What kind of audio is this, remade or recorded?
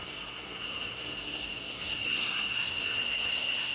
remade